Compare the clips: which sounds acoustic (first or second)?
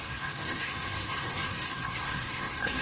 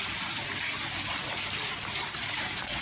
second